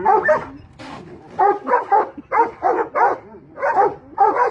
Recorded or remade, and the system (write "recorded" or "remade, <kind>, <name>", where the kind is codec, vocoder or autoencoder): recorded